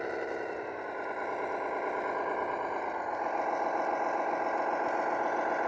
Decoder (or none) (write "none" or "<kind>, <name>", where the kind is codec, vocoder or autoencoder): none